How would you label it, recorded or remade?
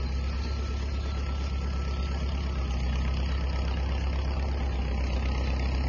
recorded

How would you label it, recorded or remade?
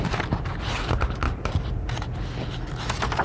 recorded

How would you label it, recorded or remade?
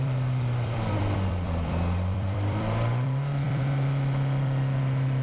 remade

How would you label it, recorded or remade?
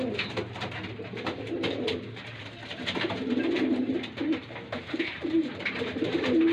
remade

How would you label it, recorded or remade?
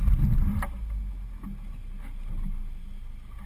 recorded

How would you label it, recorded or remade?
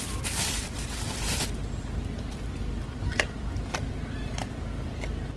remade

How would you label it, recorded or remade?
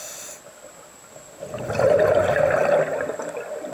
recorded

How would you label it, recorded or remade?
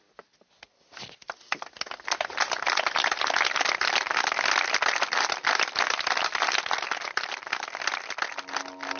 recorded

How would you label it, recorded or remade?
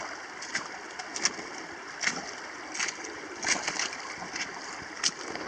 recorded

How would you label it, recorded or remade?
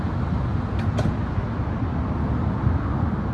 recorded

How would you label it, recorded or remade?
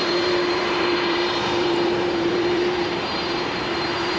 remade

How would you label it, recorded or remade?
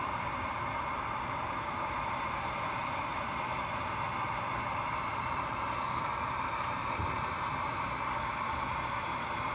remade